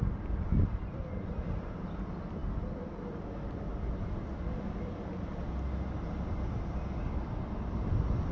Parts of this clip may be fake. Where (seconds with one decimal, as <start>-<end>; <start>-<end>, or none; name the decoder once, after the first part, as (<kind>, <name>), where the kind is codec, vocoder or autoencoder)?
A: none